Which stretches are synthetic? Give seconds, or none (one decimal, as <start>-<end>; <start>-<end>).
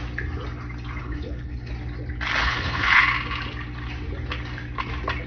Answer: 1.0-1.7; 2.4-3.0